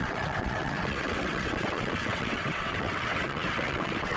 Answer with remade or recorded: remade